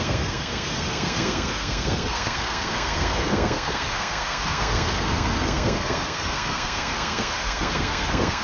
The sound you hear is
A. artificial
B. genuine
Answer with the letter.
A